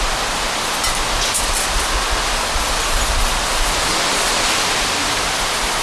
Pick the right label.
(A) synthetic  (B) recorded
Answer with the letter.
B